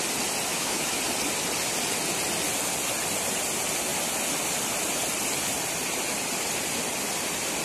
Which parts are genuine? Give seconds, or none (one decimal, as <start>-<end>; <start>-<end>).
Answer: 0.0-0.5; 1.0-7.6